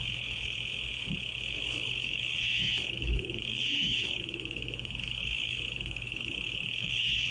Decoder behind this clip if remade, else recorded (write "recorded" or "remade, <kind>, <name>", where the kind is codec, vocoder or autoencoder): remade, codec, HILCodec